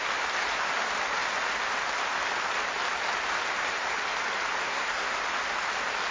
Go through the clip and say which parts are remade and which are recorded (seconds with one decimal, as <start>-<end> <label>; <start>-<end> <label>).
0.0-4.6 recorded; 4.6-5.1 remade; 5.1-6.1 recorded